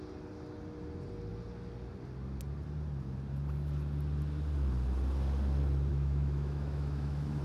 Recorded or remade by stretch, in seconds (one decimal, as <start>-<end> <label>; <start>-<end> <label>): 0.0-5.9 recorded; 5.9-7.4 remade